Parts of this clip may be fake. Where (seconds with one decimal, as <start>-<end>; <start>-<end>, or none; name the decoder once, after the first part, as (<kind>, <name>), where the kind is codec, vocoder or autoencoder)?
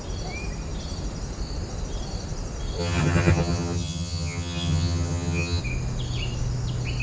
2.8-5.6 (vocoder, HiFi-GAN)